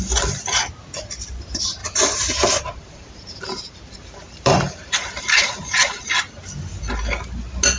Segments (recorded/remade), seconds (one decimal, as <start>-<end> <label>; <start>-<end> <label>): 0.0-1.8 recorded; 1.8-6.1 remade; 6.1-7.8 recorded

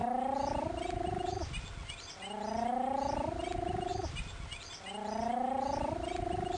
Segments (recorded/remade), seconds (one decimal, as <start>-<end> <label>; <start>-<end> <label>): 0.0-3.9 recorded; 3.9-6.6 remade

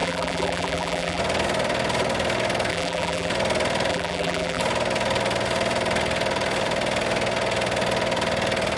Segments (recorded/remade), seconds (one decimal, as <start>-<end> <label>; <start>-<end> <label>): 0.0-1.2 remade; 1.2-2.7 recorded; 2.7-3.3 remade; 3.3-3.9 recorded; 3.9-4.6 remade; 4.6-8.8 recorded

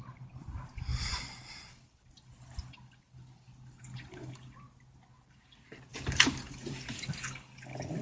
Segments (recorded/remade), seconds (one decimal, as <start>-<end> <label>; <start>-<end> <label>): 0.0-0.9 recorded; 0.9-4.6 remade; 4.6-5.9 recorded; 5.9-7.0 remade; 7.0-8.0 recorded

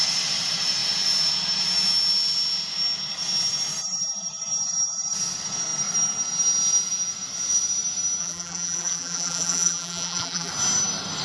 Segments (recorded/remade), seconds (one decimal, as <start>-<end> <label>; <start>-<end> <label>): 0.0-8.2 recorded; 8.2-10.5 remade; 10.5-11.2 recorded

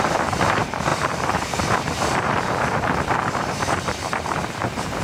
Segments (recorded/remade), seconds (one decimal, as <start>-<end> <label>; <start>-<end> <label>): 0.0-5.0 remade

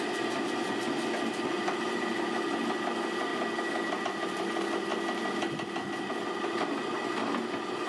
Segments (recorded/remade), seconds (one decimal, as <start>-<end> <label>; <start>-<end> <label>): 0.0-7.9 recorded